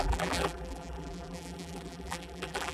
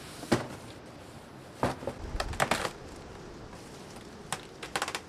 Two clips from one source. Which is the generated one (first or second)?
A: first